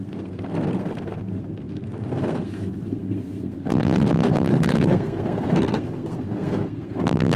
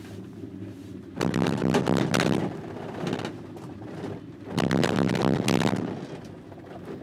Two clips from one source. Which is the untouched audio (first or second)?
second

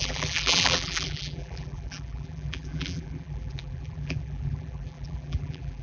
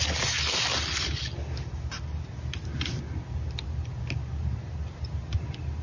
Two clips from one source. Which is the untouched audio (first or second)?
second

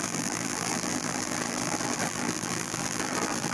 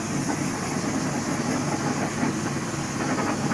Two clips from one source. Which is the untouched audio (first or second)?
second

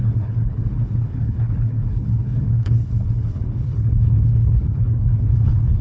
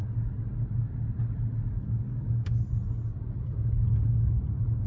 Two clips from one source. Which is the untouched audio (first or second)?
second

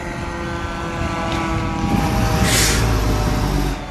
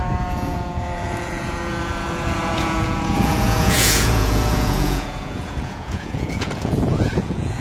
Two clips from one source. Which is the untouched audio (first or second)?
first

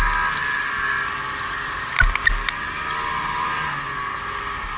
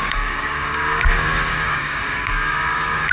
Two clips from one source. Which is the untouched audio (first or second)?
first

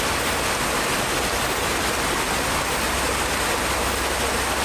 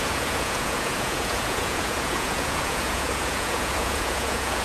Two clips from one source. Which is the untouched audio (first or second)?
first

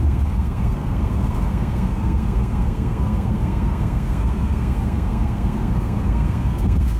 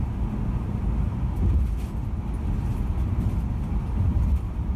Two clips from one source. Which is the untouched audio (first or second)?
second